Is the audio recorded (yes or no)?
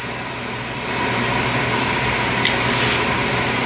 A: yes